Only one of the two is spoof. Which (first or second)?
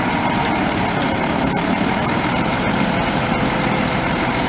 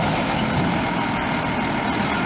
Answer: first